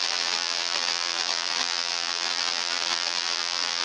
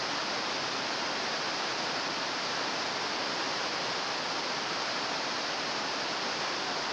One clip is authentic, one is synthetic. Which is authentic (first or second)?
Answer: second